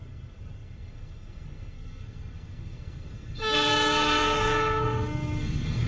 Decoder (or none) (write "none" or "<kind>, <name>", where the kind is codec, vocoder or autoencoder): codec, SNAC